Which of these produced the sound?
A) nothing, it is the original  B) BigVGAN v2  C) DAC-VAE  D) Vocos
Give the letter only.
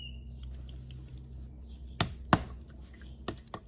A